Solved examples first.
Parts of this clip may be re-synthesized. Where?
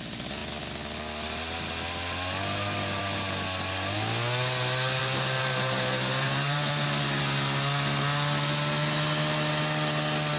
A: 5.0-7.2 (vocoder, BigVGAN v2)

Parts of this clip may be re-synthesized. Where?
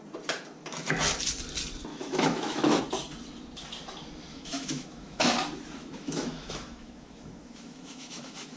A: 1.9-2.8 (autoencoder, DAC-VAE); 4.3-5.3; 5.8-8.6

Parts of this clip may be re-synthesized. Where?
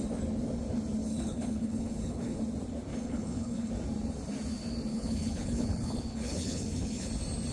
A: 1.0-2.4 (codec, HILCodec); 2.9-3.7; 4.9-7.1